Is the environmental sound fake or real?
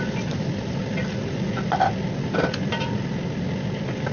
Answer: real